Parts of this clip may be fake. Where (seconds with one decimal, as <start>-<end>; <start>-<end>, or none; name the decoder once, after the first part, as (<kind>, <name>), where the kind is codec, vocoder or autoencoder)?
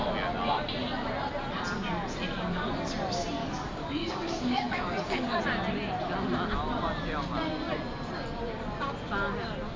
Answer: 3.4-5.4 (codec, DAC)